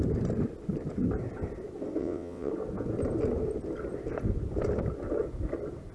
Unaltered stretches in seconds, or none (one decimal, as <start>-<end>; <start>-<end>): 0.0-2.0; 2.5-5.9